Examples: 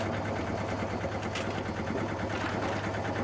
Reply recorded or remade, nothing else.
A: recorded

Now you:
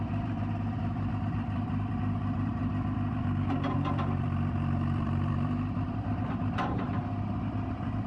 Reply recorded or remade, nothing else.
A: remade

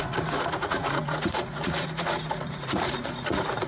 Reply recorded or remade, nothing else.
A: remade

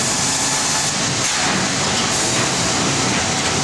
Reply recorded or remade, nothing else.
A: recorded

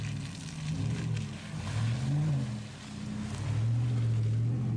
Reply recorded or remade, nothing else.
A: recorded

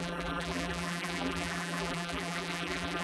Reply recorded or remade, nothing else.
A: remade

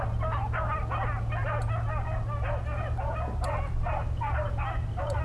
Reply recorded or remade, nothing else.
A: recorded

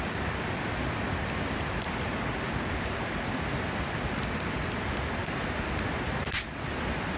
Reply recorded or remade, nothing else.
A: recorded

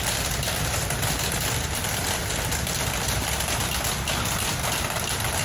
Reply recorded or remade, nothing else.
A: recorded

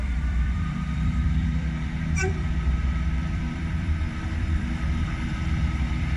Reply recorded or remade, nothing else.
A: remade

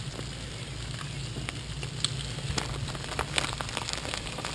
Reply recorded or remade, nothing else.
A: recorded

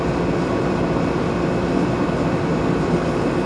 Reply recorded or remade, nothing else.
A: recorded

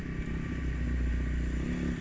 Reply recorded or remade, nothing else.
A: recorded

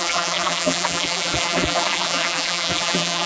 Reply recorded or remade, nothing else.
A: remade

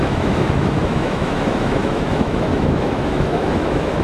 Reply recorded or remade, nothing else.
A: remade